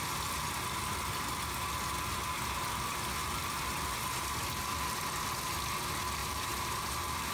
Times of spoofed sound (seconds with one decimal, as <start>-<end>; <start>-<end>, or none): 3.2-4.3; 6.2-7.3